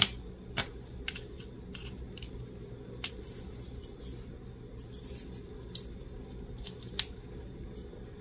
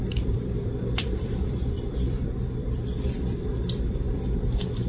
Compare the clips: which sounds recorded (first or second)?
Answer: first